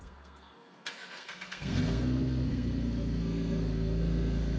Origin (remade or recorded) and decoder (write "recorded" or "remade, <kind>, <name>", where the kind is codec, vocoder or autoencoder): remade, codec, SNAC